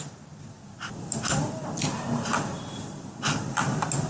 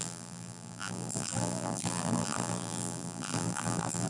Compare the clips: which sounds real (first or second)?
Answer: first